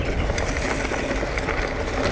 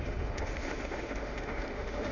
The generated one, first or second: second